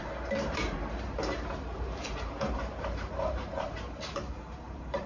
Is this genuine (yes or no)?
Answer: no